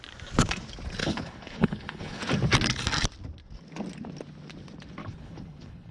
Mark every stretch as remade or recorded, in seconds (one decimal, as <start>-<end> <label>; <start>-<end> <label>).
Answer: 0.0-1.0 recorded; 1.0-2.2 remade; 2.2-5.0 recorded; 5.0-5.9 remade